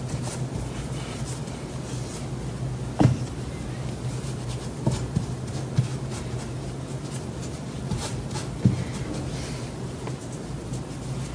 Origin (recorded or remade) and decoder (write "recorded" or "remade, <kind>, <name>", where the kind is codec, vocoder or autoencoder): recorded